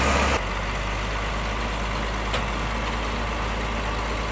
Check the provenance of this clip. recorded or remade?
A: recorded